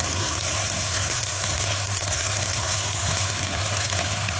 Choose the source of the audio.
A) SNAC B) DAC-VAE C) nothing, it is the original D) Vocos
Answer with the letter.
A